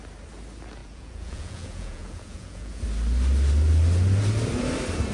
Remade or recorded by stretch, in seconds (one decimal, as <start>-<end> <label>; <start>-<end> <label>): 0.0-0.8 recorded; 0.8-2.8 remade; 2.8-5.1 recorded